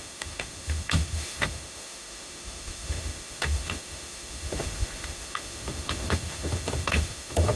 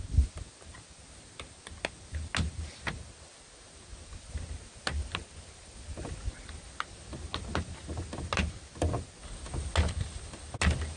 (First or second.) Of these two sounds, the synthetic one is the first